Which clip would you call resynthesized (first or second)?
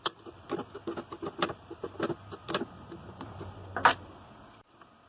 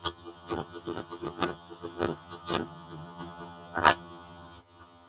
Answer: second